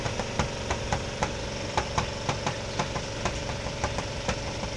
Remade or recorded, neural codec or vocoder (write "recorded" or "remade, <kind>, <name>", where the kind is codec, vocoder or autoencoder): remade, vocoder, BigVGAN v2